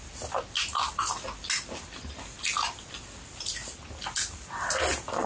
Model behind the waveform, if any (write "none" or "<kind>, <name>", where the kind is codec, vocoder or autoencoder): none